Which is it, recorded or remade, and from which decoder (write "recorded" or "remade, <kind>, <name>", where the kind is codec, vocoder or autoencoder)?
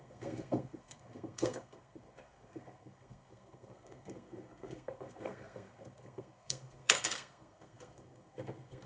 remade, codec, SNAC